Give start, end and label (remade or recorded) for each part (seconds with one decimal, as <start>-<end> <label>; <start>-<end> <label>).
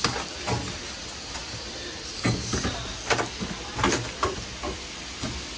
0.0-5.6 recorded